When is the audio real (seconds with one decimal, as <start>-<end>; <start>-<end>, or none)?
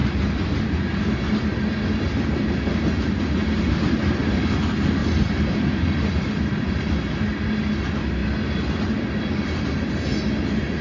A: 0.0-10.8